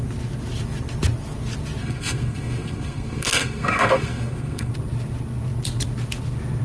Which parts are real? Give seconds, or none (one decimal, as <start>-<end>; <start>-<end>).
0.0-1.8; 4.7-6.6

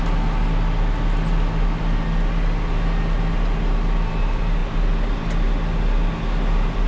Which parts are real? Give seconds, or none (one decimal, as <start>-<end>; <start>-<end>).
0.0-6.9

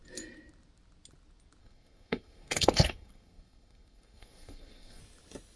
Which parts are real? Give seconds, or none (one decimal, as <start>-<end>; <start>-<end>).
0.0-1.6; 5.0-5.6

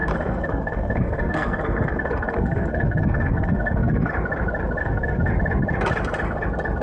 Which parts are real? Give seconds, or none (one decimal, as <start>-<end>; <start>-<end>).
4.1-4.8; 5.3-6.8

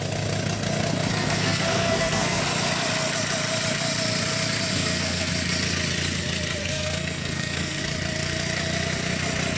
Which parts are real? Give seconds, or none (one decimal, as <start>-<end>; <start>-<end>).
0.0-1.1; 2.4-4.7; 5.3-6.6; 7.8-9.6

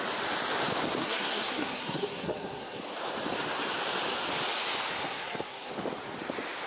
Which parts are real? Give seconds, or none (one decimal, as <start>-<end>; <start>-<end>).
0.0-1.0; 2.8-5.0; 5.7-6.7

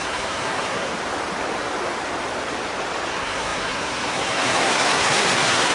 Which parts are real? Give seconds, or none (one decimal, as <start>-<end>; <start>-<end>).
0.9-3.1